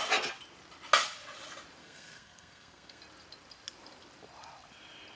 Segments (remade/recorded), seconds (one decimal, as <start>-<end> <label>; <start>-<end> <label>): 0.0-1.8 recorded; 1.8-3.0 remade; 3.0-5.2 recorded

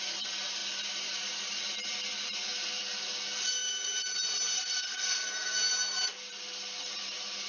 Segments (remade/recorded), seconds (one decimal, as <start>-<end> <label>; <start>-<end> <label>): 0.0-7.5 recorded

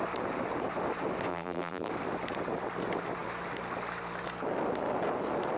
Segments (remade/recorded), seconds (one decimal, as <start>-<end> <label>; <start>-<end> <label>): 0.0-1.3 recorded; 1.3-1.9 remade; 1.9-5.6 recorded